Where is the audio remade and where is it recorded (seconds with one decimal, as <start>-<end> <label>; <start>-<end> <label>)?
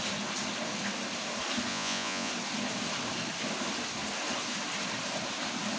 0.0-1.7 recorded; 1.7-2.3 remade; 2.3-5.8 recorded